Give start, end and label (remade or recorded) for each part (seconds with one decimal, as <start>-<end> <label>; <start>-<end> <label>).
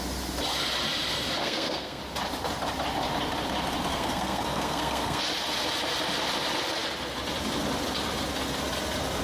0.0-1.4 recorded; 1.4-2.0 remade; 2.0-3.9 recorded; 3.9-5.2 remade; 5.2-9.2 recorded